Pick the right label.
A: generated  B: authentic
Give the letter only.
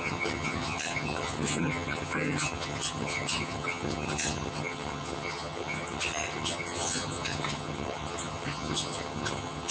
A